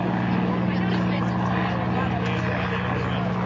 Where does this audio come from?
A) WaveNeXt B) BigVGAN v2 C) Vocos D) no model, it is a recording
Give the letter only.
D